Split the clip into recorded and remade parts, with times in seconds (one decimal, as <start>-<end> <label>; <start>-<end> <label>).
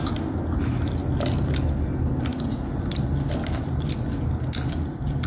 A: 0.0-5.3 recorded